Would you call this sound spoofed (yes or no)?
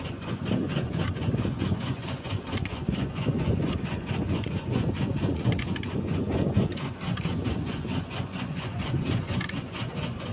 yes